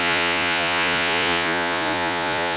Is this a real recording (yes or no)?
no